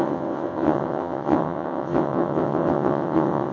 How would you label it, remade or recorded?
remade